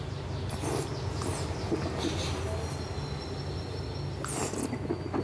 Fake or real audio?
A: real